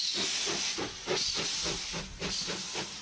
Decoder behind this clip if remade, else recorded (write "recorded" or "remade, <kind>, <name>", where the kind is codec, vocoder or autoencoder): recorded